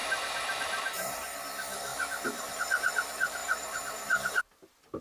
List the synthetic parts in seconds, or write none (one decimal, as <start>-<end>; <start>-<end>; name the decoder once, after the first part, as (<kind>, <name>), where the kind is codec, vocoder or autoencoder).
0.0-1.4 (vocoder, BigVGAN v2); 1.9-2.6; 3.4-4.4